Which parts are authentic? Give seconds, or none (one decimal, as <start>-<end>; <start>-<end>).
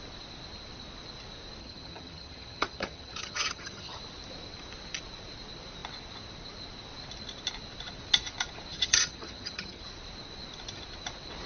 0.0-1.6; 4.0-8.7; 9.8-11.5